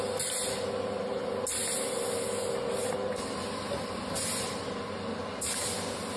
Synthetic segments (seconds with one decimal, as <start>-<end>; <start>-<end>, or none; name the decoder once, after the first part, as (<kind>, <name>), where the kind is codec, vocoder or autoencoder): none

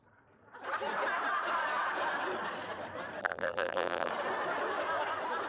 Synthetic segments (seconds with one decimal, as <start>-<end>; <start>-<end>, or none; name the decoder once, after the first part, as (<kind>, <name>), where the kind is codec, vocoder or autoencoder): 3.2-4.1 (vocoder, BigVGAN v2)

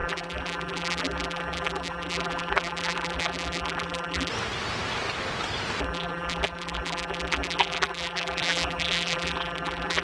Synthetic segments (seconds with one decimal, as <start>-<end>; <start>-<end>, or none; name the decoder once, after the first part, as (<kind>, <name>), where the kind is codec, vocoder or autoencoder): 0.0-4.3 (vocoder, BigVGAN v2); 5.8-10.0